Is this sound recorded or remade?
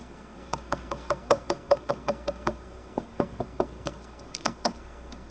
remade